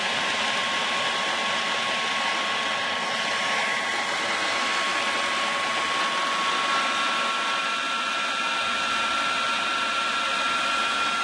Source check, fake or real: real